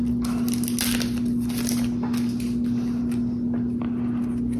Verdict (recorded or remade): recorded